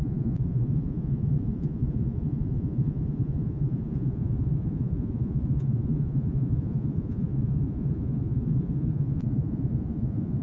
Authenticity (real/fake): fake